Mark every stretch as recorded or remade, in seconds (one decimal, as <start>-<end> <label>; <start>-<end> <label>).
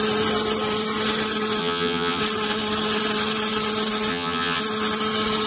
0.0-1.6 recorded; 1.6-2.2 remade; 2.2-4.1 recorded; 4.1-4.6 remade; 4.6-5.5 recorded